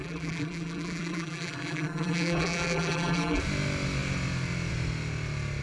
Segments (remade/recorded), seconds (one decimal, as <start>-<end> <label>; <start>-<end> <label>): 0.0-3.4 remade; 3.4-5.6 recorded